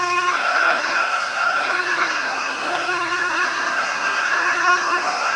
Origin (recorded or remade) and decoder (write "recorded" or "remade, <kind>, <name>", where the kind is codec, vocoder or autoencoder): remade, codec, SNAC